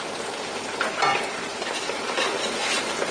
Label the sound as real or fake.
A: real